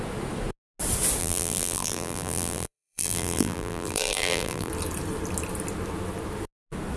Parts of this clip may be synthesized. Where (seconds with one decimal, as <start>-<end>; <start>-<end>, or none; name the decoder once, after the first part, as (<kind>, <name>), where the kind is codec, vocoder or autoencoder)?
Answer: 1.2-4.7 (vocoder, BigVGAN v2)